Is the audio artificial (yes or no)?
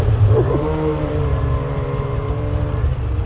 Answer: yes